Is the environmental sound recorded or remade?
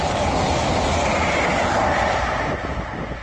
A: recorded